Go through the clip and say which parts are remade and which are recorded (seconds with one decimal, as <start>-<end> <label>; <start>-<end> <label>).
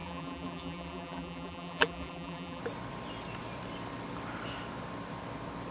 0.0-2.6 remade; 2.6-5.7 recorded